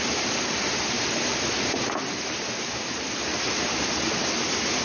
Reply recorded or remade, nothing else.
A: recorded